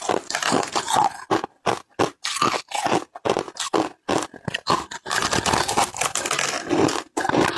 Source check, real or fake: real